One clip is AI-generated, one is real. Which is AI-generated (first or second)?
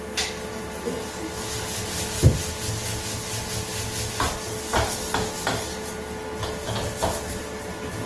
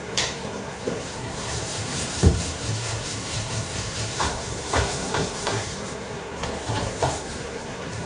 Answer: second